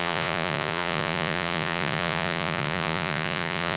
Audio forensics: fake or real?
fake